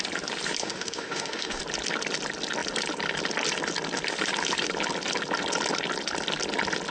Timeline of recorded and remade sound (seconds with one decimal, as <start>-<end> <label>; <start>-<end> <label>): 0.0-0.6 recorded; 0.6-1.6 remade; 1.6-6.9 recorded